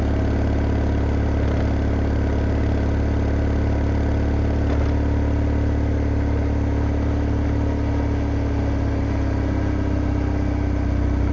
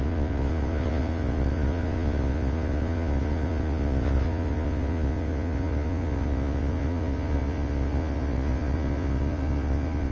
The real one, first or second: first